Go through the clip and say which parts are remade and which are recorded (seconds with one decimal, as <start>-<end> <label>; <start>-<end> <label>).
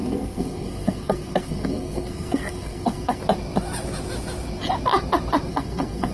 0.0-3.2 remade; 3.2-5.5 recorded; 5.5-6.1 remade